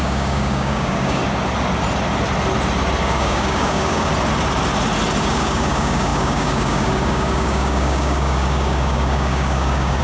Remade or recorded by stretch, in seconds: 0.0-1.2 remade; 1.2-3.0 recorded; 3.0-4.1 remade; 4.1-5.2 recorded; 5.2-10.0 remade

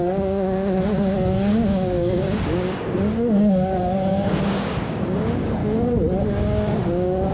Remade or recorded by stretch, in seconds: 0.0-5.6 remade; 5.6-6.2 recorded; 6.2-7.3 remade

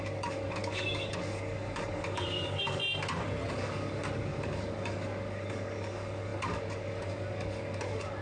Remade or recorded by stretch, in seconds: 0.0-2.8 remade; 2.8-3.5 recorded; 3.5-8.2 remade

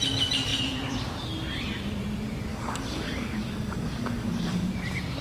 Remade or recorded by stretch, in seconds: 0.0-2.5 recorded; 2.5-4.7 remade; 4.7-5.2 recorded

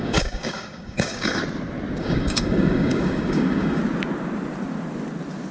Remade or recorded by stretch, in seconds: 0.0-1.4 remade; 1.4-2.0 recorded; 2.0-3.8 remade; 3.8-5.5 recorded